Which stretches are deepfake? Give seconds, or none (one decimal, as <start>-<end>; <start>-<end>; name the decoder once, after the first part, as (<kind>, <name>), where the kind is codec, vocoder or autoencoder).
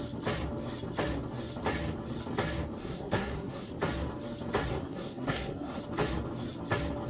2.8-3.7 (codec, SNAC); 4.7-5.8